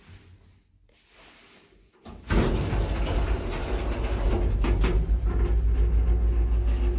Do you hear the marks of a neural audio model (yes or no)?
no